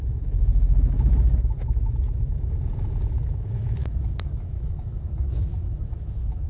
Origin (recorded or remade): remade